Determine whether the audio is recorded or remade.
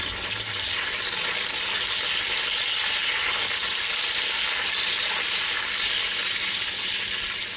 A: recorded